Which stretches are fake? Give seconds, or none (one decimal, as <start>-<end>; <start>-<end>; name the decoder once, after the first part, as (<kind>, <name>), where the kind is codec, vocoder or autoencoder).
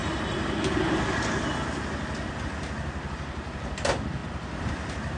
3.1-5.2 (vocoder, BigVGAN v2)